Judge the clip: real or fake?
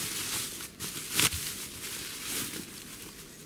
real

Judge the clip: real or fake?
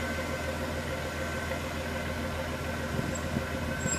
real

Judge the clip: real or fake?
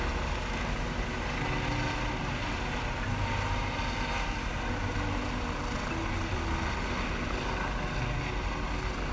real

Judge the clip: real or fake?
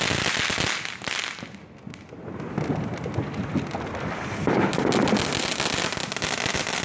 real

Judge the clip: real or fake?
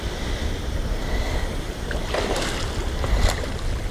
real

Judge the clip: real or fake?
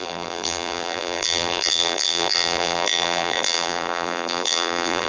fake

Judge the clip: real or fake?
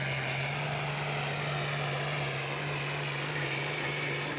real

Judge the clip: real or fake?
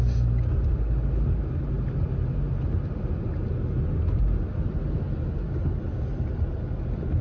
real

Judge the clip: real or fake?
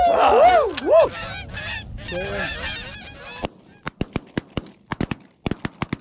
real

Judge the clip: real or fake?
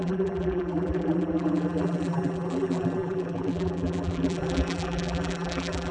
fake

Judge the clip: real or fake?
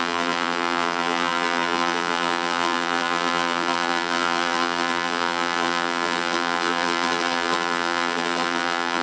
fake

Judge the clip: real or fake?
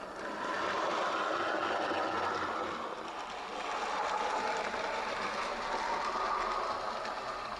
real